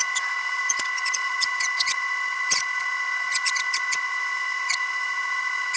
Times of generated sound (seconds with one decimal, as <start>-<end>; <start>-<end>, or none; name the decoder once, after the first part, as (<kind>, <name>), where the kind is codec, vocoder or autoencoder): 0.0-5.8 (vocoder, Vocos)